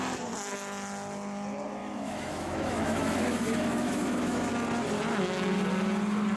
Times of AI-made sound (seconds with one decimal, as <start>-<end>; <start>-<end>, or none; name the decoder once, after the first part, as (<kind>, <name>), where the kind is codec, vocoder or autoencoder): 1.8-4.5 (autoencoder, DAC-VAE)